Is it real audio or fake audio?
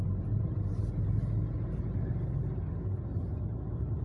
real